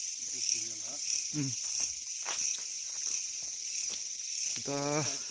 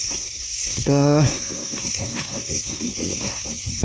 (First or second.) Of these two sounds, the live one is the first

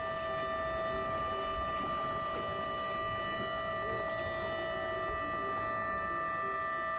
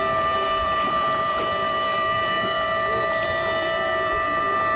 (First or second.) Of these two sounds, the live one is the first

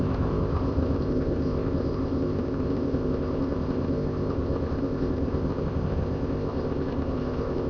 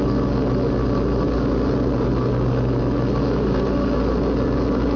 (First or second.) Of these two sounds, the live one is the second